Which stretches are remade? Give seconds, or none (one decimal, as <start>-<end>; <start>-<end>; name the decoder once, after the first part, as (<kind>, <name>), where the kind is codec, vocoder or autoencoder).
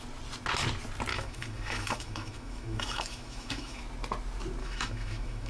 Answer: 1.1-3.8 (autoencoder, DAC-VAE); 4.6-5.5